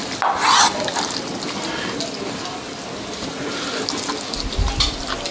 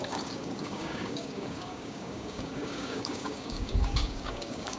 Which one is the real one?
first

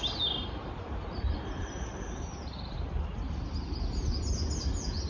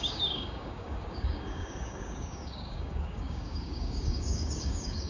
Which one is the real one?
first